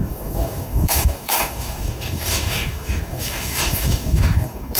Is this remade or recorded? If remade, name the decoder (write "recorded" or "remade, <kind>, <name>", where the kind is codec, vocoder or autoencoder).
remade, codec, DAC